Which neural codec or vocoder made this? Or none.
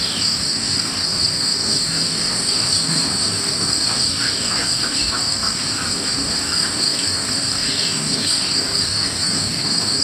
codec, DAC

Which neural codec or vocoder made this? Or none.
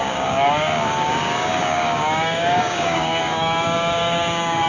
codec, DAC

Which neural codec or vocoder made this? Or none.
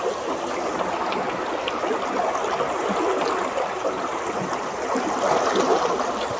none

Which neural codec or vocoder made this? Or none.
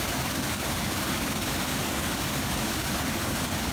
codec, DAC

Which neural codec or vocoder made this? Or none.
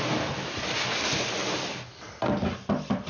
none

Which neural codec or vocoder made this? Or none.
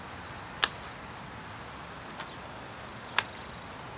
none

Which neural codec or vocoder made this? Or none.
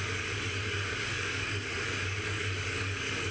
codec, DAC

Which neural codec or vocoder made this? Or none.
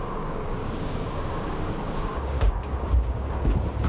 codec, DAC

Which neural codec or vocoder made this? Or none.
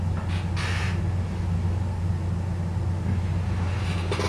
none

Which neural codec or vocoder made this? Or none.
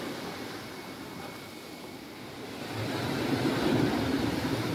none